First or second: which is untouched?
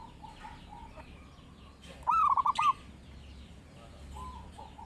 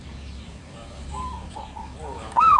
first